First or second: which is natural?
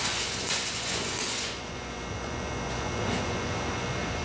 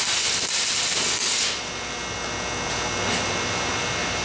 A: second